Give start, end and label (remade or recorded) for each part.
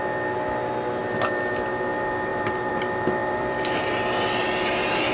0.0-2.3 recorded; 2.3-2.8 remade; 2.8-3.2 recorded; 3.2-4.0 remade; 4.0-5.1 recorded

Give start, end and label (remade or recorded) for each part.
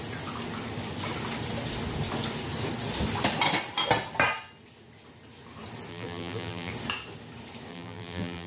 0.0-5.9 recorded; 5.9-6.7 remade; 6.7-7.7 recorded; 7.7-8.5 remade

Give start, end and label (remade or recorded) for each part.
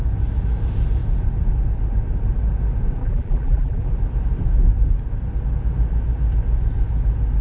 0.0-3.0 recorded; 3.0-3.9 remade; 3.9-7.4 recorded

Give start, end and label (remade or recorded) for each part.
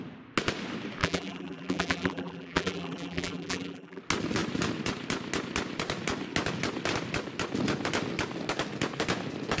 0.0-1.0 recorded; 1.0-4.0 remade; 4.0-9.6 recorded